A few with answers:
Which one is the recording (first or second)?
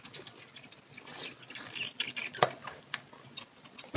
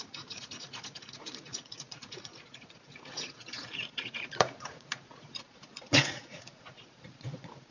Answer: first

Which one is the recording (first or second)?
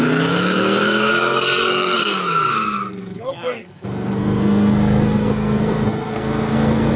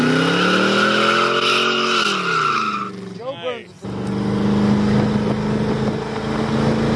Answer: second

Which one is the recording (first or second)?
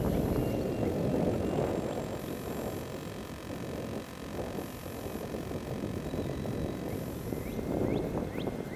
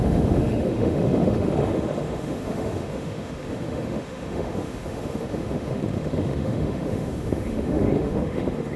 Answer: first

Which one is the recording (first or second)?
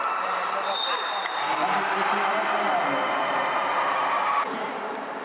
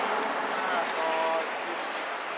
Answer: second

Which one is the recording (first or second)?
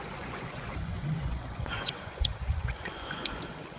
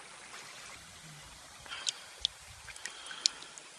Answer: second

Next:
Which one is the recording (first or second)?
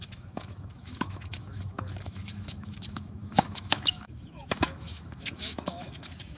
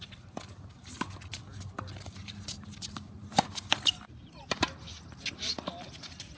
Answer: second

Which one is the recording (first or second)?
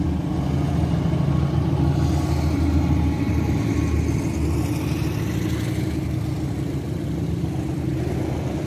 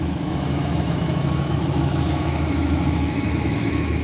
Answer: first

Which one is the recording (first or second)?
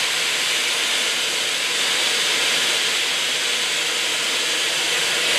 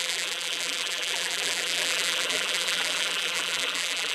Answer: first